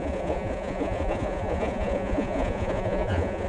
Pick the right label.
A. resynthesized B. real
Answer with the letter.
A